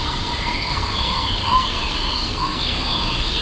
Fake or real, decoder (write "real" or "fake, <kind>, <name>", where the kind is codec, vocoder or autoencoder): fake, codec, SNAC